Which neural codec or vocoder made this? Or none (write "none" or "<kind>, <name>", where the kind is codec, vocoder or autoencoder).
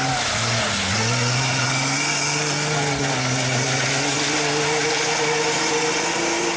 none